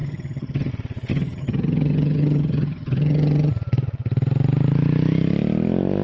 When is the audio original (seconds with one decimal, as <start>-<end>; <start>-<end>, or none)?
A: 0.7-1.1; 3.5-6.0